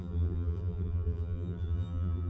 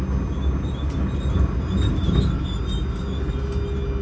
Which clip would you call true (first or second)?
second